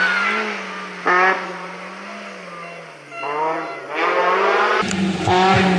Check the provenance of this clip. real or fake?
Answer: real